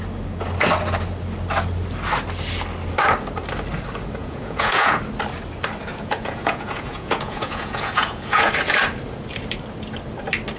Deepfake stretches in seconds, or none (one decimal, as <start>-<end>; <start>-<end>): 4.2-5.0; 5.9-8.5